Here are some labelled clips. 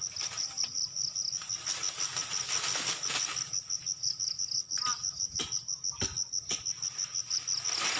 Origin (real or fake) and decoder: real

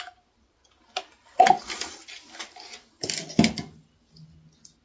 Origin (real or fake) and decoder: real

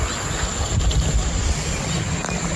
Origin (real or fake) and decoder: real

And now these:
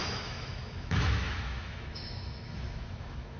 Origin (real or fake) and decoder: fake, autoencoder, DAC-VAE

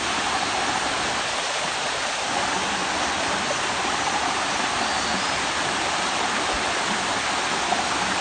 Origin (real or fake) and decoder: real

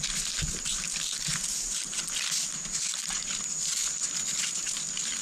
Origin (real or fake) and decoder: real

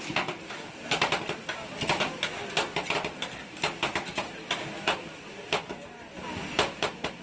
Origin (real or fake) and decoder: real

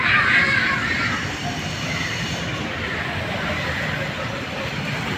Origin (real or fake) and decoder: fake, vocoder, BigVGAN v2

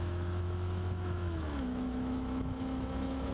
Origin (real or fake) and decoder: fake, autoencoder, DAC-VAE